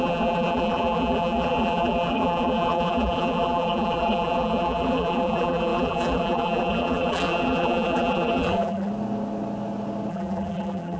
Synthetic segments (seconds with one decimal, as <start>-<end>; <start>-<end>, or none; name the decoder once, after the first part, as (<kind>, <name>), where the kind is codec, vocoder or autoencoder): 0.0-8.9 (vocoder, BigVGAN v2); 10.1-11.0